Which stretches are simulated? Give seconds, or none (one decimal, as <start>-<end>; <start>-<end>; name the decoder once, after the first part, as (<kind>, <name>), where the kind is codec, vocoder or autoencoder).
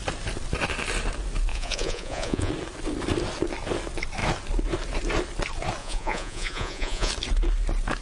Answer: 1.5-2.5 (vocoder, Vocos); 5.8-7.1